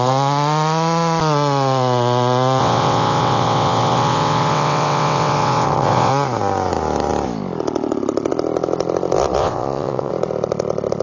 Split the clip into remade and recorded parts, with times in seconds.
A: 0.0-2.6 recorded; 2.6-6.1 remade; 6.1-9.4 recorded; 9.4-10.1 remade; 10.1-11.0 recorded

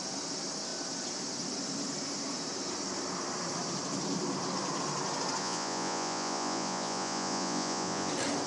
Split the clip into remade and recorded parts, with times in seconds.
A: 0.0-5.4 recorded; 5.4-8.1 remade; 8.1-8.5 recorded

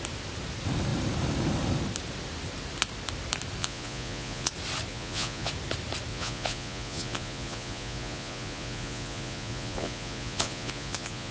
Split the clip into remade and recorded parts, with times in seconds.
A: 0.0-3.6 recorded; 3.6-4.5 remade; 4.5-4.9 recorded; 4.9-5.5 remade; 5.5-6.1 recorded; 6.1-11.3 remade

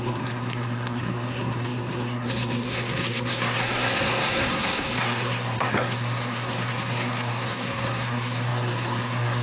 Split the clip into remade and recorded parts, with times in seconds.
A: 0.0-9.4 remade

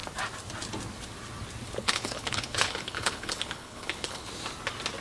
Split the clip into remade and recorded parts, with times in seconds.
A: 0.0-1.8 recorded; 1.8-4.3 remade; 4.3-5.0 recorded

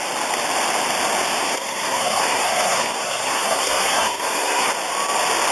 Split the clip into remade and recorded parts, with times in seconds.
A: 0.0-1.4 recorded; 1.4-4.7 remade; 4.7-5.5 recorded